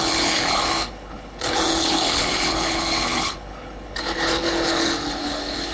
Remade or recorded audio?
remade